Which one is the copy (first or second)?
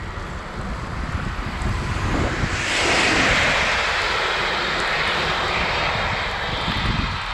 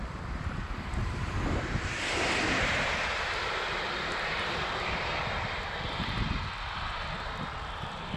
second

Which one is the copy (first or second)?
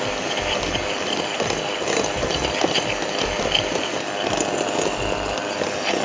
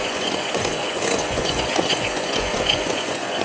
second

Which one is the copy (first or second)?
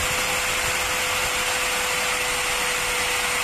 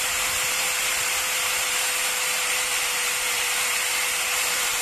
second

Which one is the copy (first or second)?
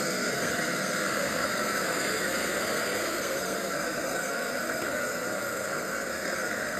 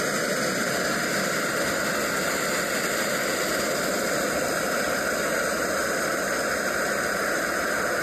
first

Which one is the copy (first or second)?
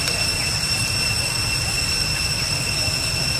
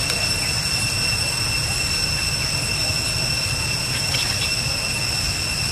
first